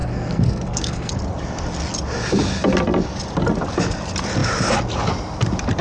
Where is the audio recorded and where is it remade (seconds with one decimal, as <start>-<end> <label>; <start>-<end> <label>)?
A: 0.0-1.1 remade; 1.1-5.8 recorded